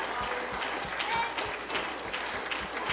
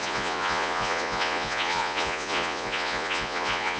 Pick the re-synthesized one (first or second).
second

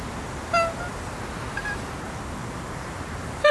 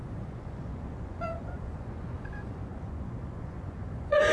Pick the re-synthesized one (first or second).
second